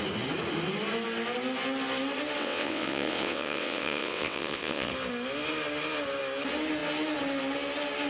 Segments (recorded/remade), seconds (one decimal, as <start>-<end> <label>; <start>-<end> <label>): 0.0-2.4 recorded; 2.4-4.9 remade; 4.9-8.1 recorded